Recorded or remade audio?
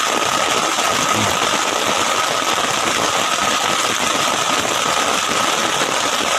recorded